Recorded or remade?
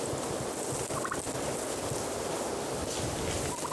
recorded